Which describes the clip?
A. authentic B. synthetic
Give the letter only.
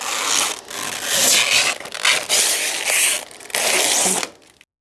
A